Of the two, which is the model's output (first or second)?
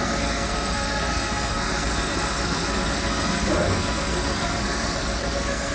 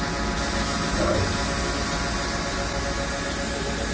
first